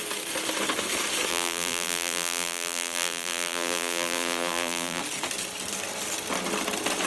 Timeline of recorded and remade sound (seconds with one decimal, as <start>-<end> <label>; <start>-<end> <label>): 0.0-1.3 recorded; 1.3-5.0 remade; 5.0-7.1 recorded